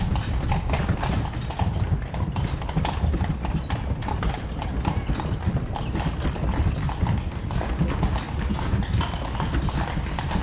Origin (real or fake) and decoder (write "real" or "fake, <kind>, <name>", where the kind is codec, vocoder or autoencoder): real